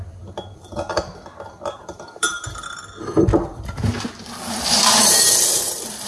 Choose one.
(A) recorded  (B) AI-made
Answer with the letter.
B